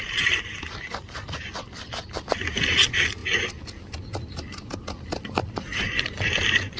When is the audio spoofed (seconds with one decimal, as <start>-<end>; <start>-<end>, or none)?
none